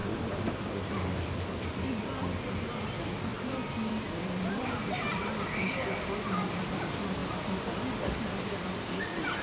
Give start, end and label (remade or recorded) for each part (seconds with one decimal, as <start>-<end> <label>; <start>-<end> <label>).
0.0-0.7 recorded; 0.7-3.3 remade; 3.3-3.9 recorded; 3.9-7.2 remade; 7.2-8.0 recorded; 8.0-9.4 remade